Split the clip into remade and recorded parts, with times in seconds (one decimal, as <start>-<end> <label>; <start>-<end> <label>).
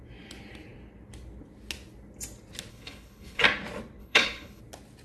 0.0-2.7 recorded; 2.7-3.4 remade; 3.4-4.0 recorded; 4.0-4.6 remade; 4.6-5.0 recorded